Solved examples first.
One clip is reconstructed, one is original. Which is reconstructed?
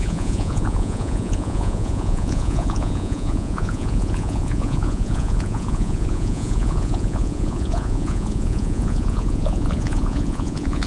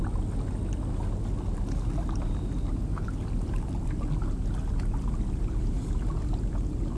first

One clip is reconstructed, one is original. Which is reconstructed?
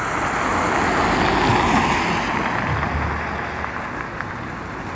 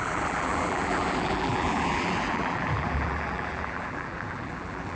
second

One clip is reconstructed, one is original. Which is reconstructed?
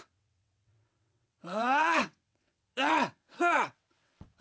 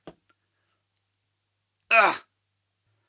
first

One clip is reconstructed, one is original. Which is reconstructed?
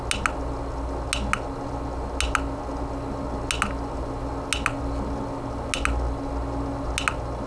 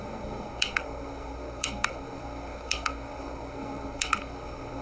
second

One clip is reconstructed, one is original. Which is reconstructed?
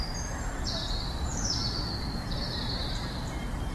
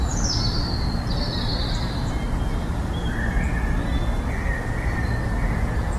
first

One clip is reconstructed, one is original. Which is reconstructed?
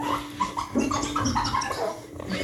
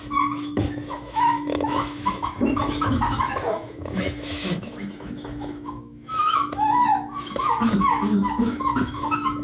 second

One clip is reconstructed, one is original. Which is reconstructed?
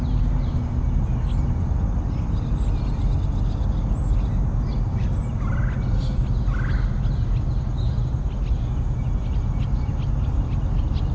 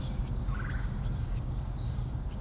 second